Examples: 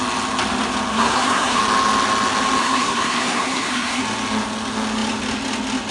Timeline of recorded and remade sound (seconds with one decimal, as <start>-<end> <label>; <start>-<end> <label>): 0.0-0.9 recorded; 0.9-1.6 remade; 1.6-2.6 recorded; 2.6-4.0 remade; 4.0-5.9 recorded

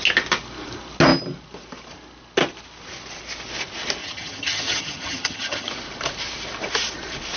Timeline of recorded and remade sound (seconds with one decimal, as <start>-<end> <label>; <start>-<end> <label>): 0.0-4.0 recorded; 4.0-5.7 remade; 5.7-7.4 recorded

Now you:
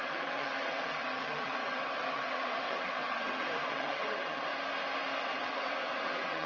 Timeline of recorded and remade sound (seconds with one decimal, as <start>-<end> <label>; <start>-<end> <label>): 0.0-4.5 remade; 4.5-5.2 recorded; 5.2-6.5 remade